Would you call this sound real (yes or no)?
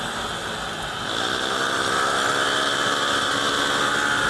yes